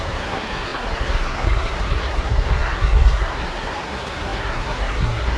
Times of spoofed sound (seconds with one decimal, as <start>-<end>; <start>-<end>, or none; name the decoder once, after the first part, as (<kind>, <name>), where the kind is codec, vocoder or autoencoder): 0.0-5.4 (codec, SNAC)